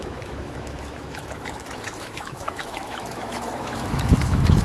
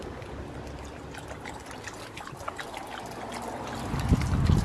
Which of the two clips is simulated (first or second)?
first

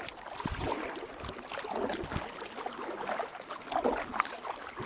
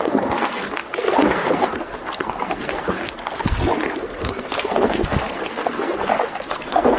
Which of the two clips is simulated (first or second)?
second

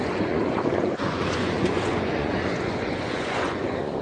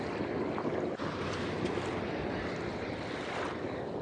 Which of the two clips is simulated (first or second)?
first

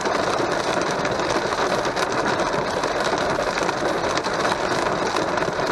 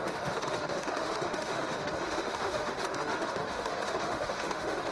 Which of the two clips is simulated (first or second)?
second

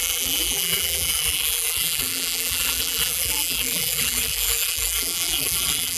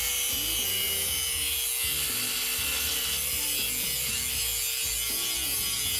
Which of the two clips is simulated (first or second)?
first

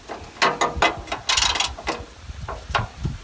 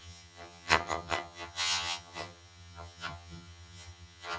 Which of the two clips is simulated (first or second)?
second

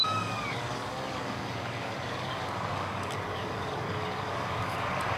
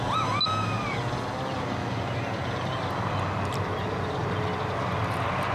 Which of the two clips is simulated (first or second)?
first